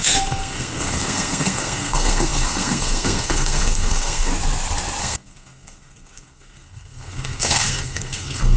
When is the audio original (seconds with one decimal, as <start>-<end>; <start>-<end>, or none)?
4.3-5.0